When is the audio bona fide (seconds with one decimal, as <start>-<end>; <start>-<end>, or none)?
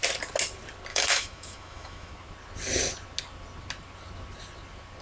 0.0-0.9; 2.1-5.0